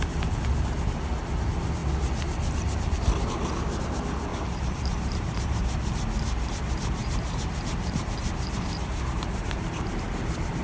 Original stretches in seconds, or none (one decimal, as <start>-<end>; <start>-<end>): 0.0-4.3; 5.9-7.0; 9.9-10.6